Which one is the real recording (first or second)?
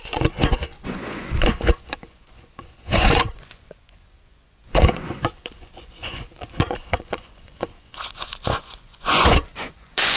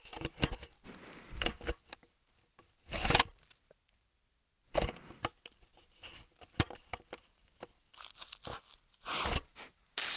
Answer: second